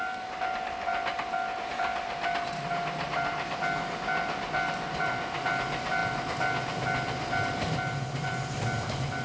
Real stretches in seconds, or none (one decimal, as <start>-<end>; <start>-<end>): 0.0-9.2